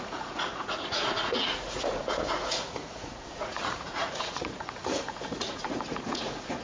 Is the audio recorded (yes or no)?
no